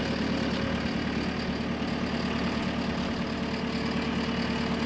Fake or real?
real